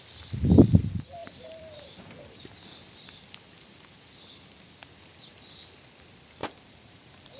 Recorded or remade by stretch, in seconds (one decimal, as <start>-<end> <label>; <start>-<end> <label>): 0.0-1.2 recorded; 1.2-2.5 remade; 2.5-6.4 recorded; 6.4-7.4 remade